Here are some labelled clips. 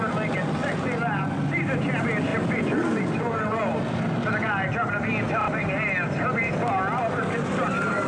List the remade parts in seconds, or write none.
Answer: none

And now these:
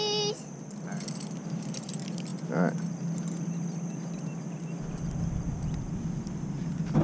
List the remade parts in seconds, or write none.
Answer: none

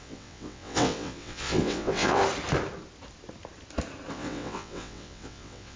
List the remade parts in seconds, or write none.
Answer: 0.0-2.2 (vocoder, WaveNeXt); 4.1-5.8

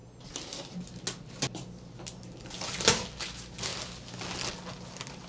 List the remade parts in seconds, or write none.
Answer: none

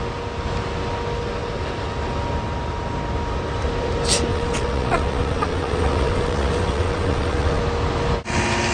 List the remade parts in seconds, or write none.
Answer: 4.3-7.6 (vocoder, WaveNeXt)

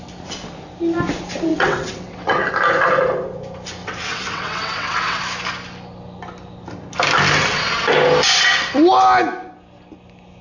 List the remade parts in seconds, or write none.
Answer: 1.5-2.4 (vocoder, WaveNeXt); 3.8-5.2

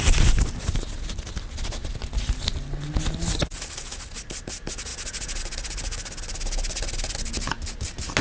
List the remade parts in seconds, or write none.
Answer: none

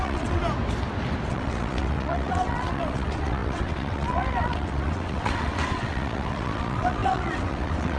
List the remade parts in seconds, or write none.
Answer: 0.0-0.4 (vocoder, WaveNeXt); 1.3-8.0